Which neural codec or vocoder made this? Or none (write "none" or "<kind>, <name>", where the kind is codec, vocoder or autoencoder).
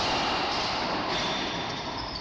none